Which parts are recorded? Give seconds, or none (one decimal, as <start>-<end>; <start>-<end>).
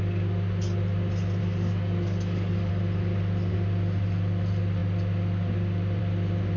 0.0-1.4; 2.7-6.6